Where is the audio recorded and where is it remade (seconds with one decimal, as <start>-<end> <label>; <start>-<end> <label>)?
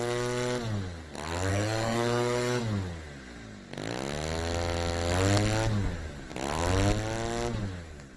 0.0-1.5 recorded; 1.5-2.6 remade; 2.6-8.2 recorded